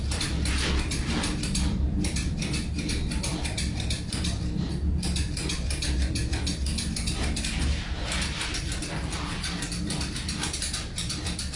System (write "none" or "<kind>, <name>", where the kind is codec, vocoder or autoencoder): vocoder, BigVGAN v2